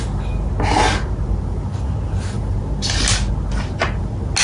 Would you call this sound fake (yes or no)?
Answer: no